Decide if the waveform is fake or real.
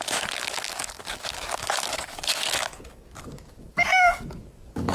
fake